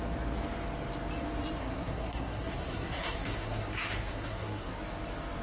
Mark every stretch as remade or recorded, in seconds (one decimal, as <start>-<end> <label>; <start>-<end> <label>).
0.0-1.6 recorded; 1.6-4.8 remade; 4.8-5.4 recorded